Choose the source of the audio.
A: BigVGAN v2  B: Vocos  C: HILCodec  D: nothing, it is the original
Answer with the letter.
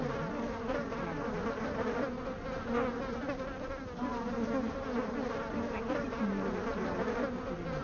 D